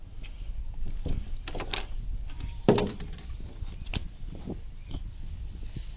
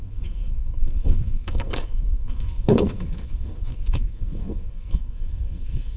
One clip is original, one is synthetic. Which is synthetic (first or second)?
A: second